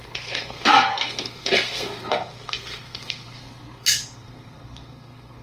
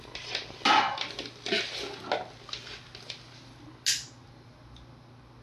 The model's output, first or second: first